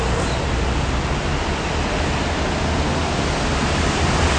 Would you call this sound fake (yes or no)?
no